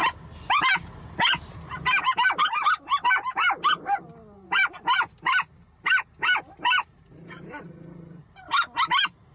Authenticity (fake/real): real